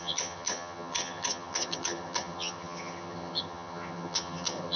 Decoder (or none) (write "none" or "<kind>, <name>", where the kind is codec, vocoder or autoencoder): vocoder, HiFi-GAN